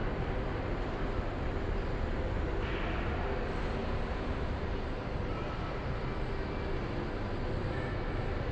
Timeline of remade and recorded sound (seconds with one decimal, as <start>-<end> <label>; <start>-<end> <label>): 0.0-8.5 recorded